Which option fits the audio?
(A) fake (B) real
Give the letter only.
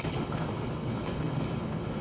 A